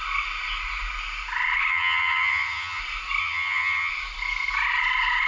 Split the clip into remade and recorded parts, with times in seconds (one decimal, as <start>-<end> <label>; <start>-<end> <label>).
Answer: 0.0-1.7 recorded; 1.7-2.8 remade; 2.8-3.2 recorded; 3.2-3.9 remade; 3.9-5.3 recorded